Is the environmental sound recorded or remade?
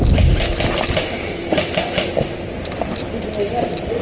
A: recorded